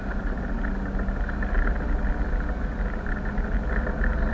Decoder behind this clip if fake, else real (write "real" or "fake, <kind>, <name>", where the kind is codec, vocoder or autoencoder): real